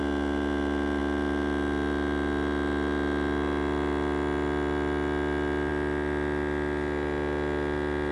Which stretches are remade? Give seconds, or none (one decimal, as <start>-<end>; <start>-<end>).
none